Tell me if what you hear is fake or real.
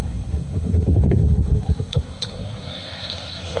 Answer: fake